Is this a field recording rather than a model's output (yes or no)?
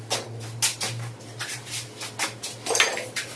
yes